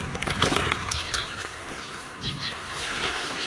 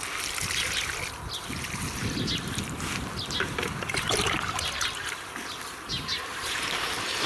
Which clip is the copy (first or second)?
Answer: first